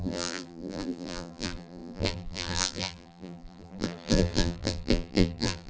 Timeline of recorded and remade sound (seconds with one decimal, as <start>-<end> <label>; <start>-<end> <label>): 0.0-5.7 remade